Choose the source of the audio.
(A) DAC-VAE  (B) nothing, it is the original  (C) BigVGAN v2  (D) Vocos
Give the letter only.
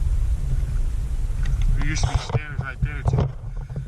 B